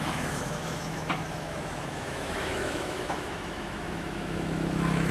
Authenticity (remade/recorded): remade